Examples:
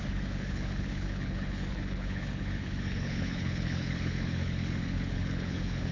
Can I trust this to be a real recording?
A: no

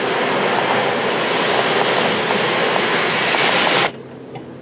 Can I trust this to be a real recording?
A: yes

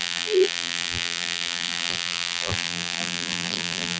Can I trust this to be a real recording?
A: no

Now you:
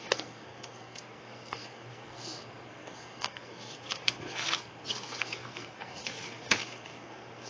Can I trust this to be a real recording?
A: no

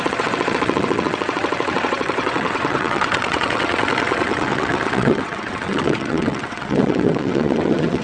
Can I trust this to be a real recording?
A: no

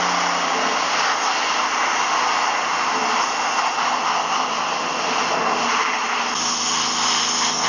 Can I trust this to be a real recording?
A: yes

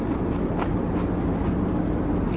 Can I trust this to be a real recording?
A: yes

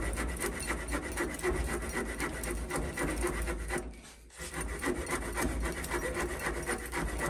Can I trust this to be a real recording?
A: yes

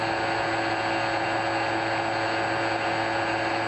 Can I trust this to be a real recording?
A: yes